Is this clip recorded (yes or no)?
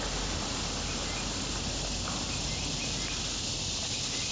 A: yes